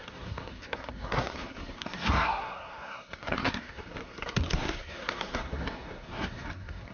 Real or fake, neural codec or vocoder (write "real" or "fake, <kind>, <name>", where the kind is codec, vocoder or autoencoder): fake, codec, SNAC